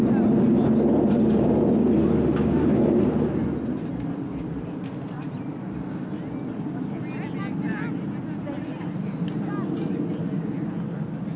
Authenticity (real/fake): real